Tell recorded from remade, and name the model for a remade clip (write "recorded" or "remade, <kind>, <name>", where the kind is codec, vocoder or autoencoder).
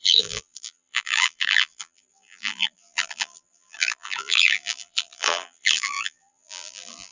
remade, vocoder, BigVGAN v2